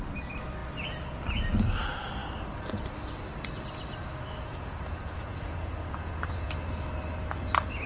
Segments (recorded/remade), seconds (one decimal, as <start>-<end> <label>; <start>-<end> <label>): 0.0-4.5 recorded; 4.5-6.5 remade; 6.5-7.9 recorded